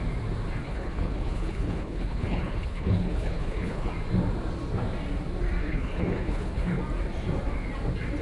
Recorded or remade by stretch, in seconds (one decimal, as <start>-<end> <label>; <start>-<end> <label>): 0.0-0.6 recorded; 0.6-3.9 remade; 3.9-5.6 recorded; 5.6-6.8 remade; 6.8-8.2 recorded